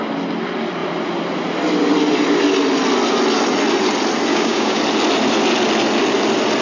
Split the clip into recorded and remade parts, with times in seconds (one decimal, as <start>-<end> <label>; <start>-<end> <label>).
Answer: 0.0-4.3 recorded; 4.3-4.8 remade; 4.8-6.6 recorded